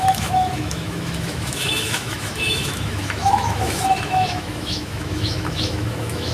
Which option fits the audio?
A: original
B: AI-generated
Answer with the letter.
B